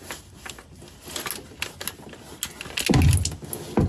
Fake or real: real